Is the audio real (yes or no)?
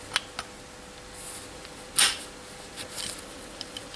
yes